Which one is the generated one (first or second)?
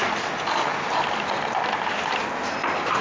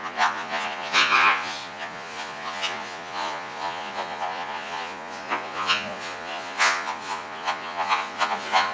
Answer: second